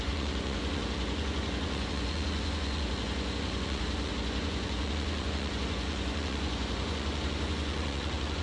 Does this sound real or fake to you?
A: fake